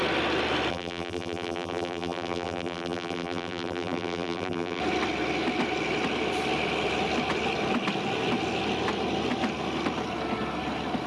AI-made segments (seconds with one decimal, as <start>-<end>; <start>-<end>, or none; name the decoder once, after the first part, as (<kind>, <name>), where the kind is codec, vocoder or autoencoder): 0.7-4.8 (vocoder, BigVGAN v2)